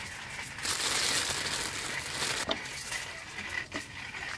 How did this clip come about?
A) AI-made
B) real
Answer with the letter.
B